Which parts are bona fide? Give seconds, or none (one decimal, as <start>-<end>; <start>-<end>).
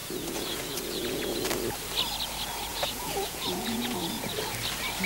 1.4-2.7; 4.4-5.1